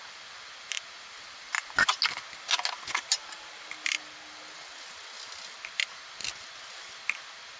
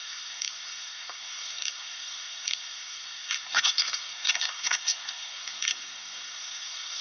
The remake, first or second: second